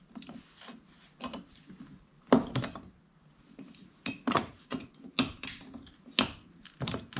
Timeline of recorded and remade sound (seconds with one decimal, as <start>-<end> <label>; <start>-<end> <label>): 0.0-3.8 recorded; 3.8-4.9 remade; 4.9-7.2 recorded